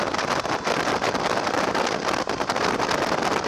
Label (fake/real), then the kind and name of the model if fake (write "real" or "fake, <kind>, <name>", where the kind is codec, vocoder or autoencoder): real